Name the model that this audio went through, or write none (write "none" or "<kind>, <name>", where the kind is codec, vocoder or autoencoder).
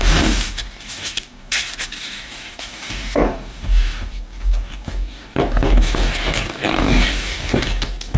codec, DAC